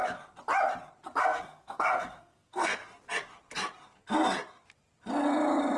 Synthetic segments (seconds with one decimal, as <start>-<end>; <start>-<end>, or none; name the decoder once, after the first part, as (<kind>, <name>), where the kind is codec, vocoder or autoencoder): 1.2-2.8 (codec, SNAC)